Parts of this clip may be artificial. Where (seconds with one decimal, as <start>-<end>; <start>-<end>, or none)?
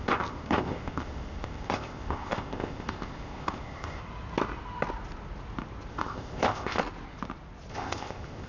0.0-4.0; 5.9-6.8; 7.7-8.5